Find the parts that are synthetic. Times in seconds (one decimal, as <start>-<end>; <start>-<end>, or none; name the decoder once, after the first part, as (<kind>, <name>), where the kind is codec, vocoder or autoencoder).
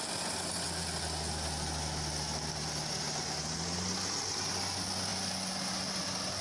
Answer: none